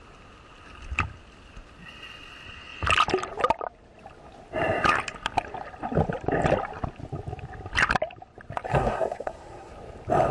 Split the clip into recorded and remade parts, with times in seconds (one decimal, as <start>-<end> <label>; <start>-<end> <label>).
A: 0.0-8.7 recorded; 8.7-9.7 remade; 9.7-10.3 recorded